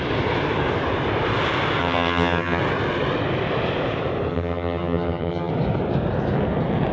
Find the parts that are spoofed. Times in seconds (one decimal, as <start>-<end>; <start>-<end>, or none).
1.8-2.6; 4.3-5.5